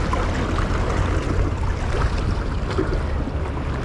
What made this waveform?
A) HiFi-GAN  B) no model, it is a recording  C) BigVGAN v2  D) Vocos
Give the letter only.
B